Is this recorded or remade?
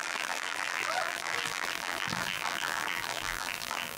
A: remade